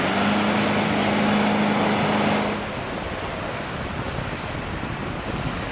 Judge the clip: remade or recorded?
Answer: recorded